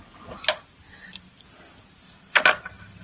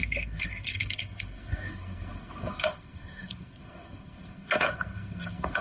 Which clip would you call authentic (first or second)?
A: first